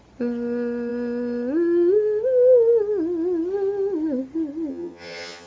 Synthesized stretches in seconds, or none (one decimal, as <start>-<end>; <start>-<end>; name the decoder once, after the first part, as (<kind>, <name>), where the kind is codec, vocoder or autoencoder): 4.7-5.5 (vocoder, HiFi-GAN)

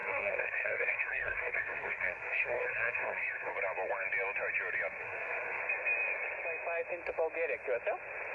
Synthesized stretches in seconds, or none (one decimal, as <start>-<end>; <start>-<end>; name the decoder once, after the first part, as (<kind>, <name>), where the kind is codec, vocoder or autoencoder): 0.0-3.5 (codec, SNAC); 5.0-5.6